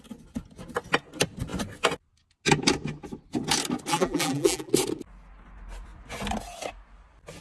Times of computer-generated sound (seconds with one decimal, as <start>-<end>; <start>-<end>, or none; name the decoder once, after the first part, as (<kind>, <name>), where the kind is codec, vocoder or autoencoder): 3.9-4.7 (vocoder, BigVGAN v2)